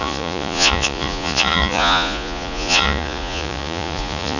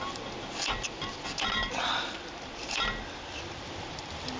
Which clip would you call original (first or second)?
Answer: second